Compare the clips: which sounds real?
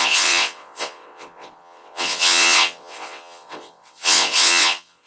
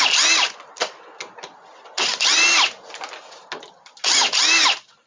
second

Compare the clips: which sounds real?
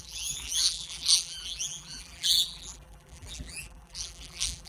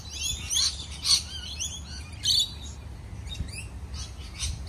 second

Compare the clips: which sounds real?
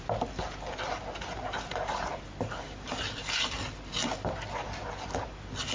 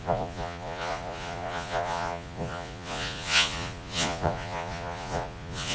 first